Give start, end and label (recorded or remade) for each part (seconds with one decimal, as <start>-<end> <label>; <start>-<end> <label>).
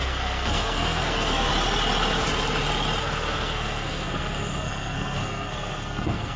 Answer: 0.0-1.5 remade; 1.5-3.0 recorded; 3.0-6.4 remade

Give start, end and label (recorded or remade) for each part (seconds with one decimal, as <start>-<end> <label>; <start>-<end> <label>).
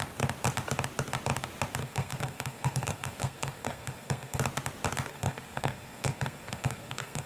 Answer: 0.0-1.8 recorded; 1.8-4.4 remade; 4.4-5.1 recorded; 5.1-7.3 remade